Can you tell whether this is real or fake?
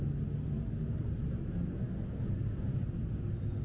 real